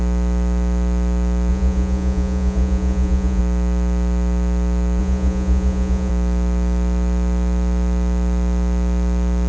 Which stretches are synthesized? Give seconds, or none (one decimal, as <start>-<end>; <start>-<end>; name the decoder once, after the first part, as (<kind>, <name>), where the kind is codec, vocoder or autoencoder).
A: 1.5-3.4 (vocoder, Vocos); 5.0-6.1